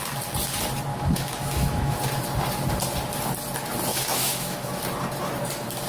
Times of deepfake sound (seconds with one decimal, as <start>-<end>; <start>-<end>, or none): 0.9-2.0; 3.9-4.7